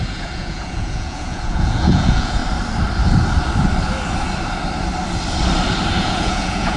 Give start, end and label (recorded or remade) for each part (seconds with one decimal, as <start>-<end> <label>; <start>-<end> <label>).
0.0-2.4 remade; 2.4-6.0 recorded; 6.0-6.8 remade